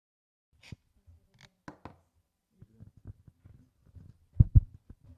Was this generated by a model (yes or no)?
no